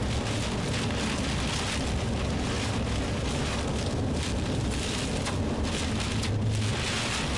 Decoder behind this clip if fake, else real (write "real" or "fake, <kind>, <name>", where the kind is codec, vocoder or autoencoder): real